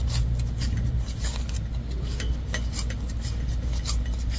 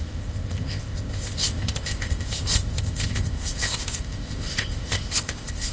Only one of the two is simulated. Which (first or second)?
second